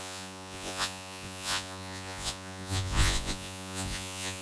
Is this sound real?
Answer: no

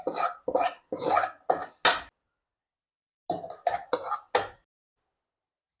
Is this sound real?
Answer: yes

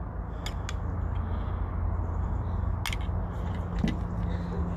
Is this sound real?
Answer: yes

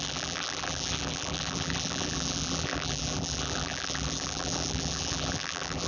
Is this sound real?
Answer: no